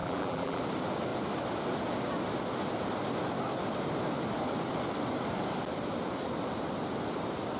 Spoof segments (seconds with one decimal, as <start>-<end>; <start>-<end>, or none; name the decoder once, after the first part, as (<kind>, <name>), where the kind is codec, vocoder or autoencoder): 0.0-0.6 (vocoder, BigVGAN v2)